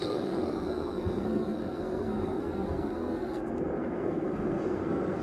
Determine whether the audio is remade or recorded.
remade